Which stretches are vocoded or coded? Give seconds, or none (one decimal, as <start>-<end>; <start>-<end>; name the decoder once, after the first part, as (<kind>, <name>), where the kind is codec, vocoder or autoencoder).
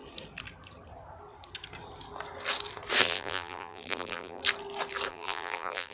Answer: 3.0-4.4 (vocoder, BigVGAN v2); 5.1-5.9